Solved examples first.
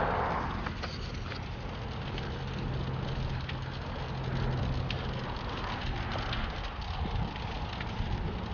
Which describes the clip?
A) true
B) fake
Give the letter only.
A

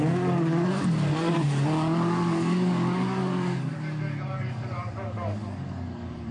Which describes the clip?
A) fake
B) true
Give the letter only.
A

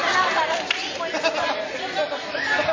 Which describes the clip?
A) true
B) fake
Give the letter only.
A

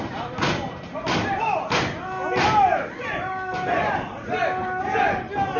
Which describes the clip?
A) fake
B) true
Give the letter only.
B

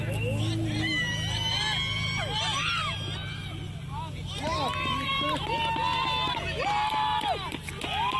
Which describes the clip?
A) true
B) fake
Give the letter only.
A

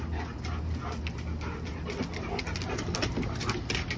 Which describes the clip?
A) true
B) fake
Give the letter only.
A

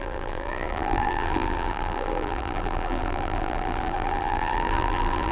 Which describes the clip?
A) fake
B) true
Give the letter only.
A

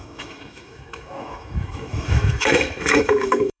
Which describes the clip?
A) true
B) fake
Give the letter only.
B